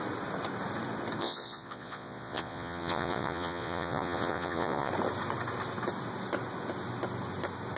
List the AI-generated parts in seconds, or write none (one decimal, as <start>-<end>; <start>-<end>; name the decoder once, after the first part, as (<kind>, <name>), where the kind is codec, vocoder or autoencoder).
1.2-4.9 (vocoder, Vocos)

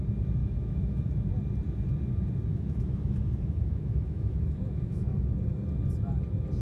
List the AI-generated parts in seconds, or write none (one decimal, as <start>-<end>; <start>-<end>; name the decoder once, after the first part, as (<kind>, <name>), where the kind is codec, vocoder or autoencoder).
0.4-1.3 (autoencoder, DAC-VAE); 2.5-5.2

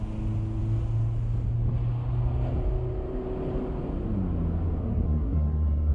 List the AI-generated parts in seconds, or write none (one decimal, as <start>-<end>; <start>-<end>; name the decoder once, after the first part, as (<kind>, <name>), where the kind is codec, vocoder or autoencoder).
4.8-5.9 (codec, SNAC)

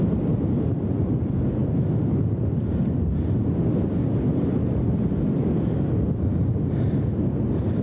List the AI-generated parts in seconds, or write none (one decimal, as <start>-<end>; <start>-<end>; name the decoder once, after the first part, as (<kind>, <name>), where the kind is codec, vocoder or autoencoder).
none